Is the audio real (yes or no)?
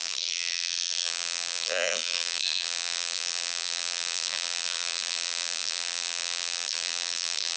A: no